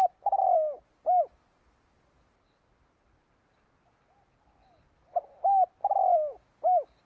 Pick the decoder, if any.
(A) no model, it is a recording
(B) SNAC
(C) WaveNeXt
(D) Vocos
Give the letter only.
A